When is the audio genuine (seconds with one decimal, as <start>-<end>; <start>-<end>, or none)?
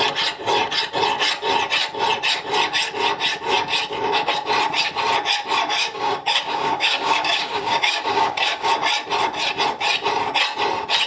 0.0-5.8; 8.7-11.1